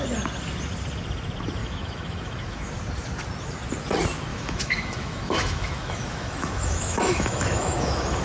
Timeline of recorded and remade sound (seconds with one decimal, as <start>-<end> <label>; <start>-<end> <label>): 0.0-1.6 recorded; 1.6-2.7 remade; 2.7-4.3 recorded; 4.3-8.2 remade